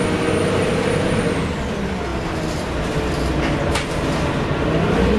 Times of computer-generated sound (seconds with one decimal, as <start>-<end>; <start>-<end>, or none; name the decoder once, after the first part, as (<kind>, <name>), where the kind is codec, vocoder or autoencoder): none